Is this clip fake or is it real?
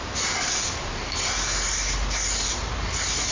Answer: real